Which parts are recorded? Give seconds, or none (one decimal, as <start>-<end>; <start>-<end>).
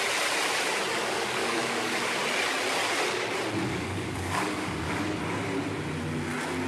0.0-0.9; 2.2-3.7; 5.2-6.7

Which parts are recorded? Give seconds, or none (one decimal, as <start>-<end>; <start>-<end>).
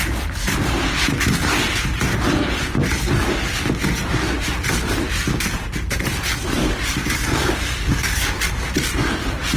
0.0-6.6; 8.4-9.6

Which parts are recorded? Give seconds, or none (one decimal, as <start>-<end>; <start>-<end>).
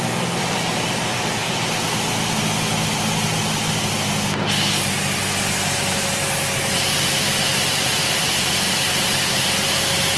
0.0-10.2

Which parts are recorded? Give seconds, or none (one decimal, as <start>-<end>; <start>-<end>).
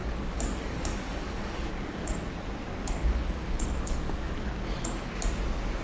2.2-3.0; 4.3-5.8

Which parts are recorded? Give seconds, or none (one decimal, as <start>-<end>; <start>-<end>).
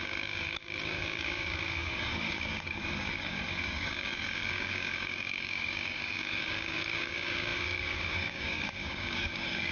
none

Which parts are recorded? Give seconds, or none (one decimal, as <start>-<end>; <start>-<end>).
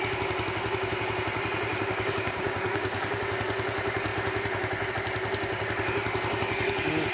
0.0-1.7; 3.2-7.1